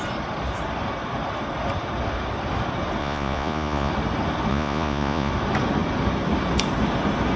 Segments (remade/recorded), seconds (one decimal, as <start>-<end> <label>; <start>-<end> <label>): 0.0-3.0 recorded; 3.0-3.9 remade; 3.9-4.5 recorded; 4.5-5.3 remade; 5.3-7.4 recorded